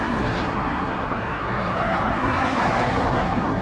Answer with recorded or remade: remade